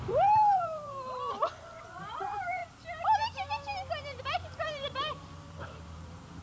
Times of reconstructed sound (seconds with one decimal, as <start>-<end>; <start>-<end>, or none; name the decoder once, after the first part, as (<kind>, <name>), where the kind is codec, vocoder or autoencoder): 0.0-1.4 (vocoder, BigVGAN v2); 2.0-2.6; 4.2-6.4